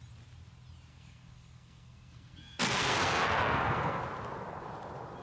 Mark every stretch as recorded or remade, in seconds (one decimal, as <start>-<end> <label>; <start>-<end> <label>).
0.0-0.9 recorded; 0.9-4.0 remade; 4.0-5.2 recorded